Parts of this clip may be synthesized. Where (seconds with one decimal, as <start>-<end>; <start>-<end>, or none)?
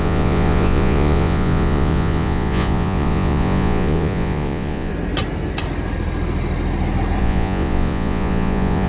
0.0-4.9; 7.2-8.9